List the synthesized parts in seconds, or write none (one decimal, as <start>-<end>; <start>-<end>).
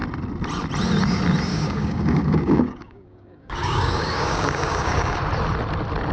1.5-5.2